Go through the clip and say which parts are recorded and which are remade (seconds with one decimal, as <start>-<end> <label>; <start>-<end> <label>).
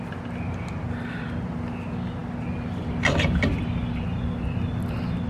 0.0-5.3 recorded